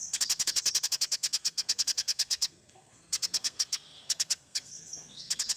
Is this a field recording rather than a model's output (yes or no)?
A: no